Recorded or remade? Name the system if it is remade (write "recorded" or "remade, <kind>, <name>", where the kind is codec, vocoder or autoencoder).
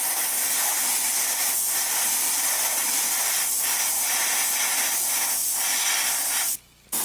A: recorded